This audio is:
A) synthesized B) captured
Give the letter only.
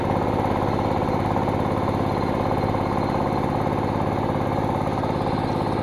B